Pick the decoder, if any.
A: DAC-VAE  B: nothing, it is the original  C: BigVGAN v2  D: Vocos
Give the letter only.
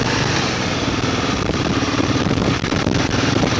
C